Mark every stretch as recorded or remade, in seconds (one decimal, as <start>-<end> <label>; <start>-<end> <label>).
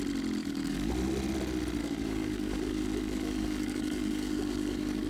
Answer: 0.0-0.4 recorded; 0.4-0.9 remade; 0.9-1.8 recorded; 1.8-5.1 remade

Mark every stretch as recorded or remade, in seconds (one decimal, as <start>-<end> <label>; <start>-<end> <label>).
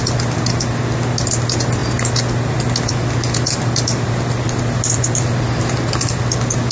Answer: 0.0-6.7 recorded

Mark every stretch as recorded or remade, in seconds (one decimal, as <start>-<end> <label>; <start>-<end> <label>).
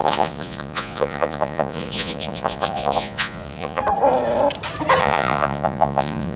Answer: 0.0-3.8 remade; 3.8-5.0 recorded; 5.0-6.4 remade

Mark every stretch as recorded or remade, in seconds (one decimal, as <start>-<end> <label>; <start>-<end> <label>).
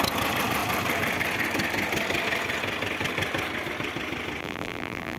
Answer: 0.0-4.4 recorded; 4.4-5.2 remade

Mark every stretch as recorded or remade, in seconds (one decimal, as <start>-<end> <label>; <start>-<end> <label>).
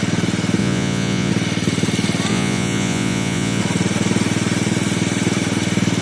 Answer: 0.0-0.6 recorded; 0.6-1.3 remade; 1.3-2.3 recorded; 2.3-3.6 remade; 3.6-6.0 recorded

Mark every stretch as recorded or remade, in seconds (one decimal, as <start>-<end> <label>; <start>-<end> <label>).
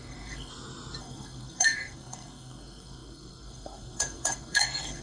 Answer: 0.0-0.5 remade; 0.5-1.0 recorded; 1.0-5.0 remade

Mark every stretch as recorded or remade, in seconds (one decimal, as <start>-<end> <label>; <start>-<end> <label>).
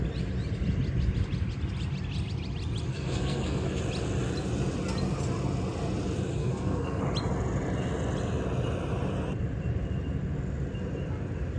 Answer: 0.0-2.9 recorded; 2.9-3.8 remade; 3.8-6.4 recorded; 6.4-7.0 remade; 7.0-11.6 recorded